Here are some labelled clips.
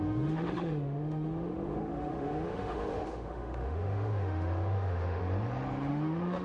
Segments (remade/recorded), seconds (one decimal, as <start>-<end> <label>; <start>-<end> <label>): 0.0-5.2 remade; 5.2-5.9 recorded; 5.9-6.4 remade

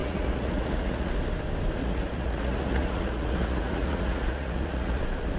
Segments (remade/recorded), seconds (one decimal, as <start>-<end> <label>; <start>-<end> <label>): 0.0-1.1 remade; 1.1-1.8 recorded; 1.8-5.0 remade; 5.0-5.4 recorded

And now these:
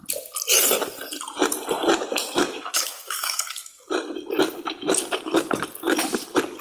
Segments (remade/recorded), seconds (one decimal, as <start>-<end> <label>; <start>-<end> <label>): 0.0-2.1 recorded; 2.1-3.9 remade; 3.9-6.6 recorded